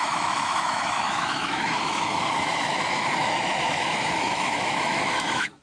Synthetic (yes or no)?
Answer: yes